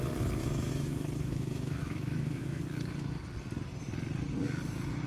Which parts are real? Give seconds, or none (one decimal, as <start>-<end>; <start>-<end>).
0.0-0.4; 2.6-5.1